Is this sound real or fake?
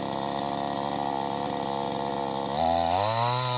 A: real